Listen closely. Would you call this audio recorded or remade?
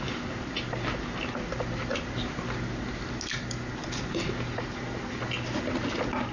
recorded